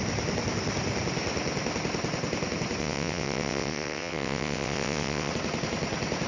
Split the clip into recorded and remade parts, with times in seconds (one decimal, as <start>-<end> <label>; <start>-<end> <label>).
0.0-2.8 recorded; 2.8-5.3 remade; 5.3-6.3 recorded